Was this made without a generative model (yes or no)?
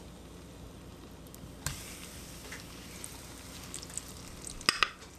yes